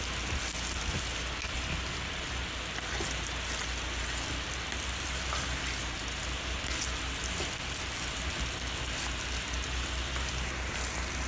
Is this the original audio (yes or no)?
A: yes